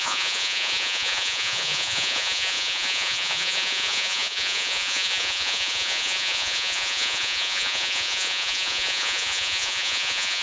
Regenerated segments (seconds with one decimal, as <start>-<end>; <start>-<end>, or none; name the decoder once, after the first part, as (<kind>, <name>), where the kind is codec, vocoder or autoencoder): 0.0-10.4 (vocoder, Vocos)